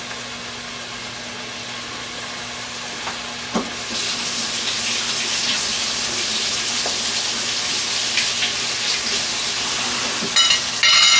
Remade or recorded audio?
recorded